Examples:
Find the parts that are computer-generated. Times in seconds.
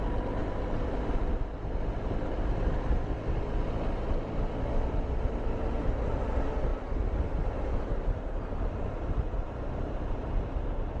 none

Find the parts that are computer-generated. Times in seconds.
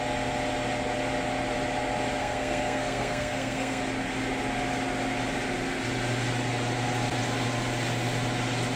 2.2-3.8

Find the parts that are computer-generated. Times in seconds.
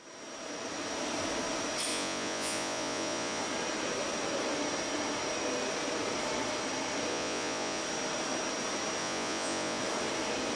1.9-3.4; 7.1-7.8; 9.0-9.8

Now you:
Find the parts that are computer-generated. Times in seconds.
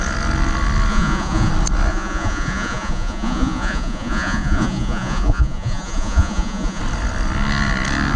0.9-1.5; 1.9-6.8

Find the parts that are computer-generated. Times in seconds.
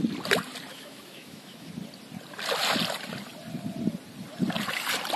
0.7-1.7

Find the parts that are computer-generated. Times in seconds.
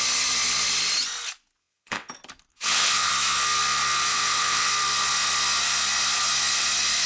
1.6-2.1; 2.5-3.1; 4.1-4.7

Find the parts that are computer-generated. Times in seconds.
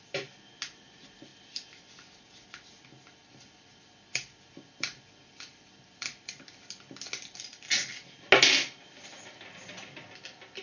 1.3-1.9; 3.2-6.4; 7.5-8.3